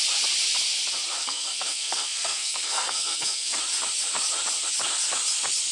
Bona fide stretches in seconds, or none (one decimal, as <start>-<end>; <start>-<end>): 0.0-1.2; 3.6-5.7